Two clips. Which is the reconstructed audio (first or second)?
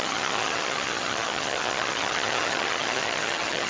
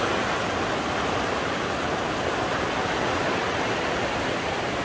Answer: first